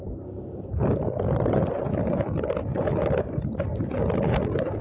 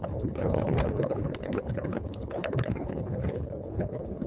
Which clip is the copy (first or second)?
second